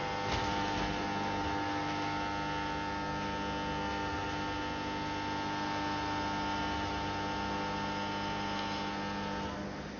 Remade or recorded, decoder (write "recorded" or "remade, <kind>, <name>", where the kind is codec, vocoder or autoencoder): recorded